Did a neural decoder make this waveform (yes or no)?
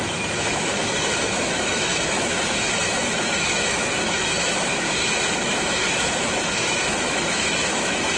yes